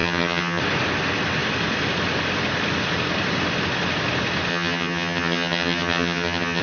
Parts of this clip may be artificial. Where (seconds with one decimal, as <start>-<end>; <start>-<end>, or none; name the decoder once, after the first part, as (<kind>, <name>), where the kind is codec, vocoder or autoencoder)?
0.0-0.6 (vocoder, HiFi-GAN); 4.5-6.6